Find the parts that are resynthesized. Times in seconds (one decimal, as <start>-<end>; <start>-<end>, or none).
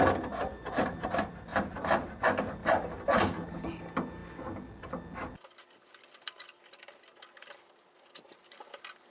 1.5-2.1; 2.6-3.2